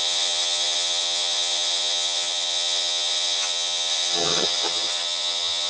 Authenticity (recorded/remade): remade